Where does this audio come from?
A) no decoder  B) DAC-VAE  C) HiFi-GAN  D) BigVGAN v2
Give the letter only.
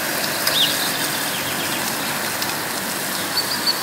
A